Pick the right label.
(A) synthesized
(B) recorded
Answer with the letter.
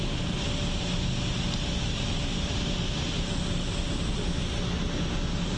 B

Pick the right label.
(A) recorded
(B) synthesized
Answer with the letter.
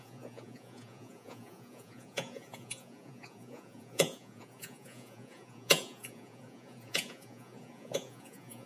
B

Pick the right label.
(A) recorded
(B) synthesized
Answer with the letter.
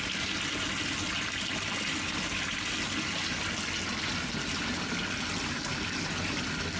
A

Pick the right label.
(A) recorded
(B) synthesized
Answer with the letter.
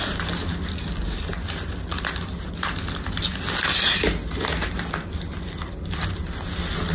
A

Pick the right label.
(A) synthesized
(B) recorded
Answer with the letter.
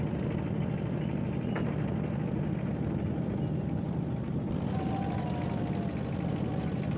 B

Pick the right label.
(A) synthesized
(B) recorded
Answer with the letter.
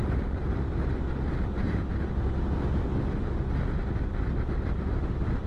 B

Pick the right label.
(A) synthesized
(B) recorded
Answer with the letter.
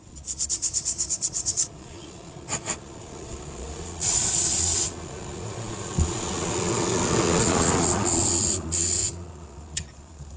A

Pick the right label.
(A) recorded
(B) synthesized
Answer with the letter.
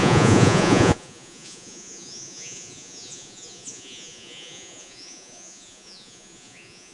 B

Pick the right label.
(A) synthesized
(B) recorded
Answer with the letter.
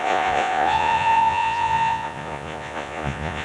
A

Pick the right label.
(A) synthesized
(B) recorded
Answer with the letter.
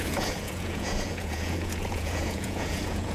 A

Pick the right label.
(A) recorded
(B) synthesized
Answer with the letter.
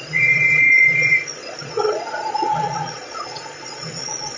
B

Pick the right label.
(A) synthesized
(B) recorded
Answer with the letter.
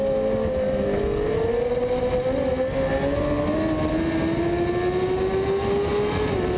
B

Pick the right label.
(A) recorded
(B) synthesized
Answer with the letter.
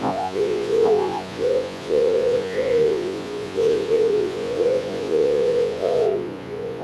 B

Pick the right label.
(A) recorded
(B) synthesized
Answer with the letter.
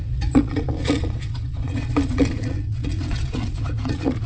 B